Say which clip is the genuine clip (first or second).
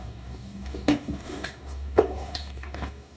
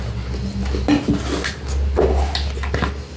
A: second